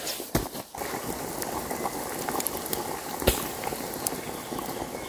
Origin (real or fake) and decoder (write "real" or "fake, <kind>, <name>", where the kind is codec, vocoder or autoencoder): real